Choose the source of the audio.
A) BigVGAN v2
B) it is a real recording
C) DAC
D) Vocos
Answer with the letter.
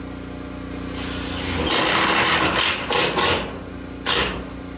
B